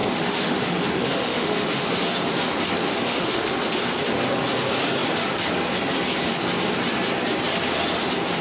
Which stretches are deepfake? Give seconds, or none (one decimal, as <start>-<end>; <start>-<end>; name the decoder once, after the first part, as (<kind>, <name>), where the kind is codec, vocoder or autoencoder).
0.0-1.9 (autoencoder, DAC-VAE); 2.9-3.5